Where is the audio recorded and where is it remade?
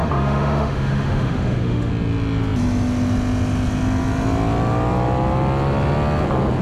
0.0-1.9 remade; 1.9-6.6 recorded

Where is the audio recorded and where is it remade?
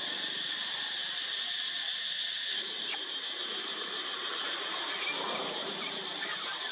0.0-6.7 recorded